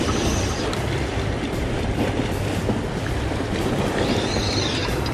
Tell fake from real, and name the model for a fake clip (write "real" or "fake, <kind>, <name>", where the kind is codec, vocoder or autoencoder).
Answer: fake, vocoder, BigVGAN v2